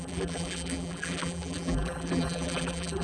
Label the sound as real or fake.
fake